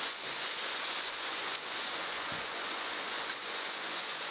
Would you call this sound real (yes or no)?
no